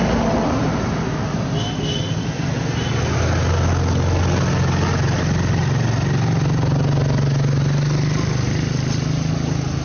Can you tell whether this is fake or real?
real